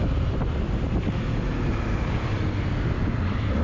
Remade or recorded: recorded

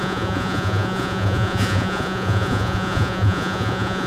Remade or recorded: remade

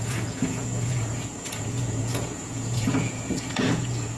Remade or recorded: remade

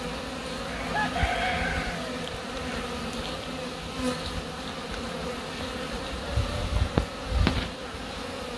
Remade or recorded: recorded